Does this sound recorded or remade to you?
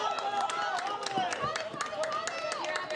recorded